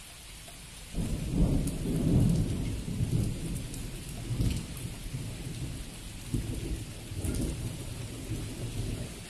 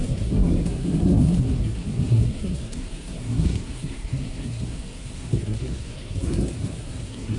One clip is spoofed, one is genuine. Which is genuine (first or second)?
first